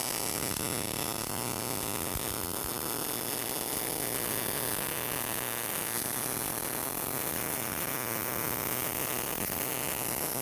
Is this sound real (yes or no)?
yes